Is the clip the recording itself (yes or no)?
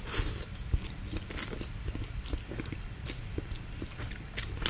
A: yes